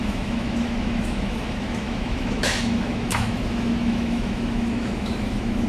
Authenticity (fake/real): fake